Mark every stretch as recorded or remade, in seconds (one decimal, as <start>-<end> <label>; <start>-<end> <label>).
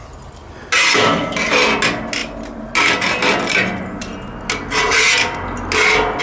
0.0-6.2 recorded